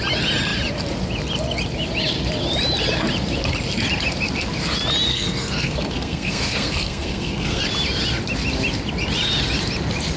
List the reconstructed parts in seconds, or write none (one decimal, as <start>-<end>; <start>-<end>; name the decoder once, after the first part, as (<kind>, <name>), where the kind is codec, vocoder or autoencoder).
5.1-7.6 (codec, SNAC)

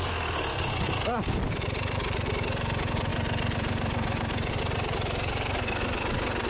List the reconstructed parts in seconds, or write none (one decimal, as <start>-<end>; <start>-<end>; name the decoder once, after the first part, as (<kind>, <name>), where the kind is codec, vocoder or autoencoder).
none

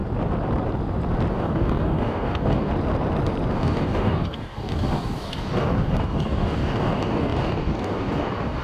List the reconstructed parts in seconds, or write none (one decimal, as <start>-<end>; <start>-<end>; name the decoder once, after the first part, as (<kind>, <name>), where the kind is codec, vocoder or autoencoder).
1.3-2.7 (codec, DAC); 3.5-8.6

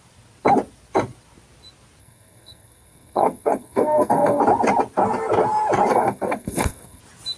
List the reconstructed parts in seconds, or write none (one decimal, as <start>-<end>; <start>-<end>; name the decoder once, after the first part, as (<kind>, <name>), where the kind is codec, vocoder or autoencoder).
2.0-4.4 (codec, SNAC); 5.9-7.0